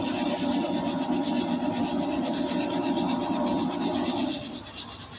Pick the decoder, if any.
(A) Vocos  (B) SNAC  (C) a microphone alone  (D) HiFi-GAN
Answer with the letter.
C